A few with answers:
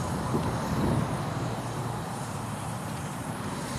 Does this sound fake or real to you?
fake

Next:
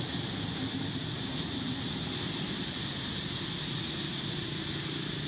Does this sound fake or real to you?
real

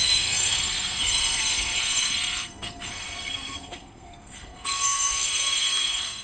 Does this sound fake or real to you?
fake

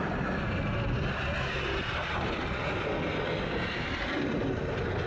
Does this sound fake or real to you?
real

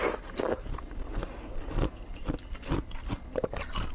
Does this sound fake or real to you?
real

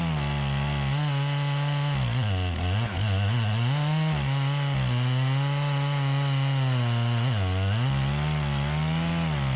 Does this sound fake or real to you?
real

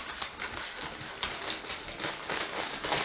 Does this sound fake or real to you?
real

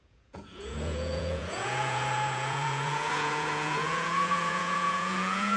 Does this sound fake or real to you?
fake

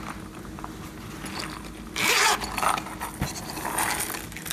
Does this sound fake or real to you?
real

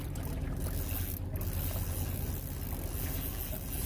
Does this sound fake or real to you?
real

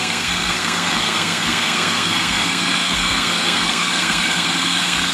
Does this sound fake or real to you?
fake